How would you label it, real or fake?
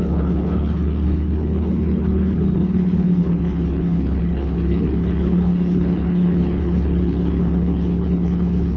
fake